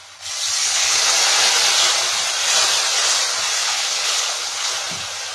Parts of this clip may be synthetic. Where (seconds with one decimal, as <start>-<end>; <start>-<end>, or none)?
0.6-1.1; 3.6-4.7